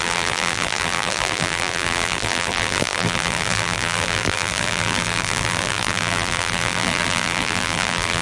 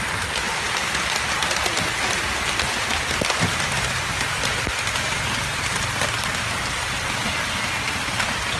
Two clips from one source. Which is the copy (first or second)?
first